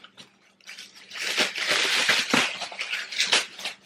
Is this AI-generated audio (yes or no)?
no